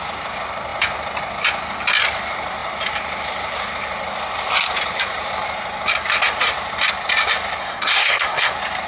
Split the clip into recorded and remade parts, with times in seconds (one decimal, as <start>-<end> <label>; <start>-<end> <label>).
0.0-7.6 recorded; 7.6-8.5 remade; 8.5-8.9 recorded